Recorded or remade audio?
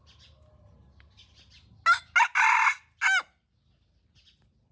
recorded